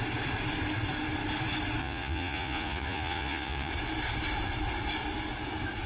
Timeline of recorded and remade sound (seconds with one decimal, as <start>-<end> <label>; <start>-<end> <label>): 0.0-1.8 recorded; 1.8-3.7 remade; 3.7-5.9 recorded